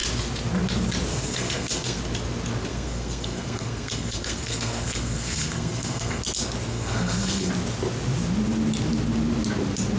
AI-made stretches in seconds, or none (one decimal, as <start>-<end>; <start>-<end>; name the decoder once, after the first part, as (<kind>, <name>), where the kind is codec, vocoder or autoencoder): 1.1-2.0 (codec, SNAC); 2.7-6.2; 6.7-7.5